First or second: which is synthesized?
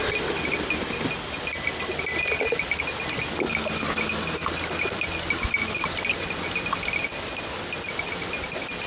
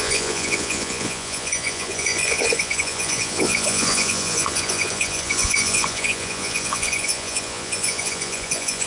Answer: second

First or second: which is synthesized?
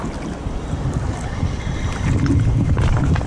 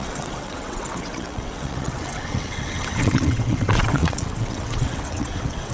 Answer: second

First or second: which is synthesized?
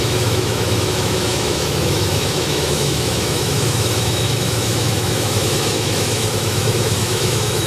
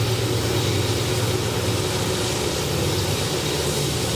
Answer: first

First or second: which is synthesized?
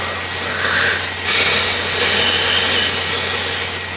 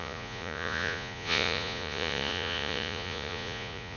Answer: second